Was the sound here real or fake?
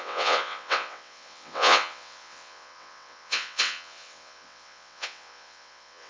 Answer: fake